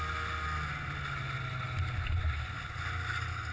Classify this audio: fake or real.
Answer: real